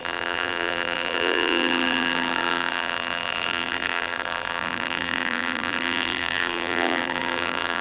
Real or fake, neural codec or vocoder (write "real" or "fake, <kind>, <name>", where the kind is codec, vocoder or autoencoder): fake, vocoder, BigVGAN v2